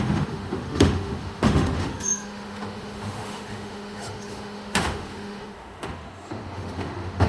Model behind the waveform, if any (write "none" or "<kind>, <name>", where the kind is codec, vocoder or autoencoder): autoencoder, DAC-VAE